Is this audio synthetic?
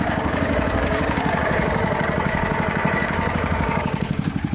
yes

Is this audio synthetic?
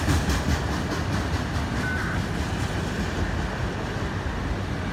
no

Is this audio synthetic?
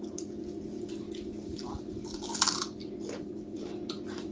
no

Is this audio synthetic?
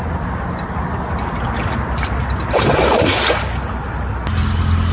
no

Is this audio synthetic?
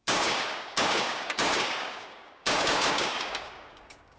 yes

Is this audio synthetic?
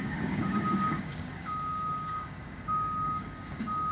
yes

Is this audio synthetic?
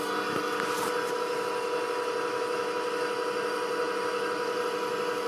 no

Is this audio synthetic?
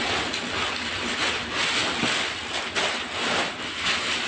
no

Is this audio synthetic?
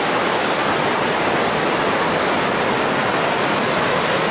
no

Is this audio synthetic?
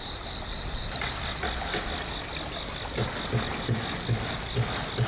no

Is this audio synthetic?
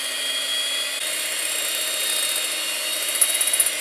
no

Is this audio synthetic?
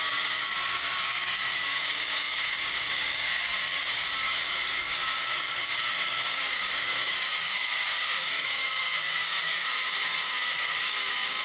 yes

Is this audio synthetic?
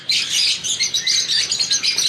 no